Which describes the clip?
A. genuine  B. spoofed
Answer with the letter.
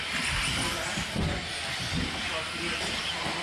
A